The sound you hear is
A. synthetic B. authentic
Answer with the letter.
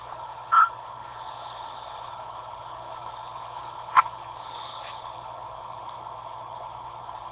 A